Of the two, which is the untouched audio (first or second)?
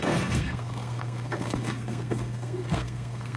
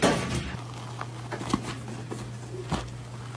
second